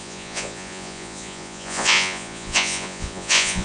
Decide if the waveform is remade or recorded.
remade